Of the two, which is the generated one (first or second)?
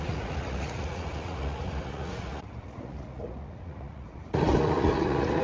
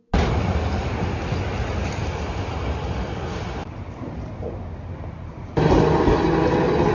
first